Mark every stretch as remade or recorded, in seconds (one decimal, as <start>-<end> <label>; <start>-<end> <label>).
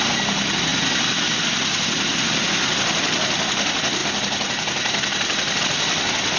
0.0-6.4 recorded